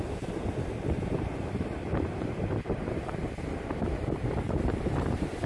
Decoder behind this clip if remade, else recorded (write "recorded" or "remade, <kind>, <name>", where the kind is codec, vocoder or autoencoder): remade, vocoder, BigVGAN v2